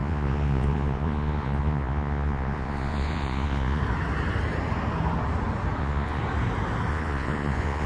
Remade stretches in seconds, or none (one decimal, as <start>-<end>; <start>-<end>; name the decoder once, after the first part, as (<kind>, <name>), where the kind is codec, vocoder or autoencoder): 0.0-3.8 (vocoder, Vocos); 5.8-6.2; 6.9-7.9